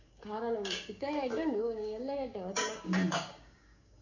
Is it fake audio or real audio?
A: fake